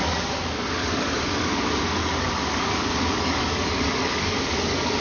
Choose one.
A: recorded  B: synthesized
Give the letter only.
B